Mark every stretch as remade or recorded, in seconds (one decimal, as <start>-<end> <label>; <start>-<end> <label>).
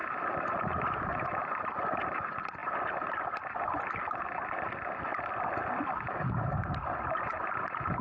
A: 0.0-8.0 recorded